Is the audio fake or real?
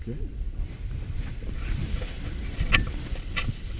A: real